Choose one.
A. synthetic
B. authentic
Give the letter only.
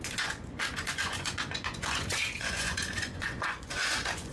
A